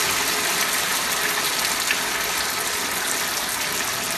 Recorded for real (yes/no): yes